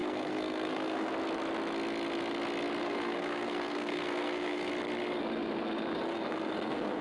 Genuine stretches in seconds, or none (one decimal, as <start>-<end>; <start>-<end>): 1.1-2.8; 4.7-6.1